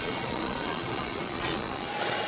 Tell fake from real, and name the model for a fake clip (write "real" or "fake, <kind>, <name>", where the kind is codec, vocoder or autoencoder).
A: fake, vocoder, Vocos